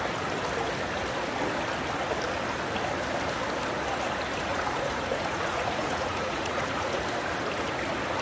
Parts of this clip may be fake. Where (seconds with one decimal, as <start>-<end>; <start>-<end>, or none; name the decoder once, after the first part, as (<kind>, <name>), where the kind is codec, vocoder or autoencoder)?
4.5-7.0 (vocoder, Vocos)